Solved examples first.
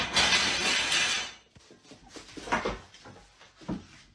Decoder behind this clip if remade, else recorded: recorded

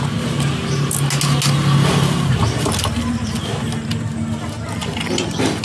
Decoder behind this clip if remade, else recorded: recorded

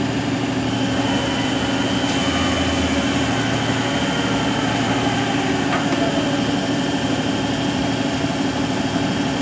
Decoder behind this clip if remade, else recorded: recorded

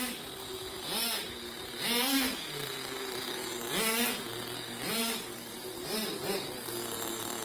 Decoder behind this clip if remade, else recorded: remade, vocoder, BigVGAN v2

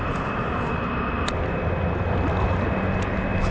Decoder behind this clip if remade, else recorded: recorded